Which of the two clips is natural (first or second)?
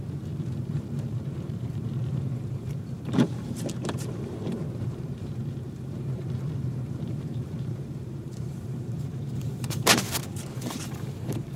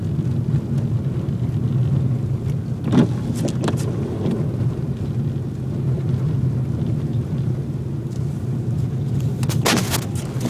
second